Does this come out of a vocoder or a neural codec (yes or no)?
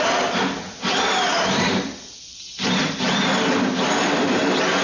no